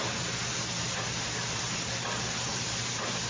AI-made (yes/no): no